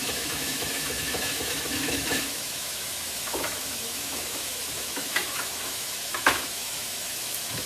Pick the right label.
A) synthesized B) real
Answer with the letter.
A